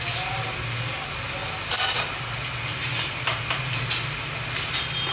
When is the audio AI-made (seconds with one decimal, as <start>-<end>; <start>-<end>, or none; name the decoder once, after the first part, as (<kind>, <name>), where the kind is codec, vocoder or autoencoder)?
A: none